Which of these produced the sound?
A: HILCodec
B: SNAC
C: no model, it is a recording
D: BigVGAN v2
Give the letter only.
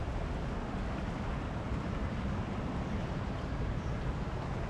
C